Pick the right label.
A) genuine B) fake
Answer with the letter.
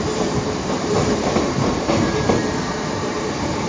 B